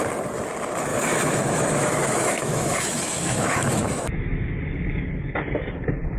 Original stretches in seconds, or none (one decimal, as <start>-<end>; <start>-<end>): 0.0-0.9; 4.6-6.2